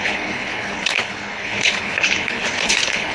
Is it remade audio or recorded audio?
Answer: remade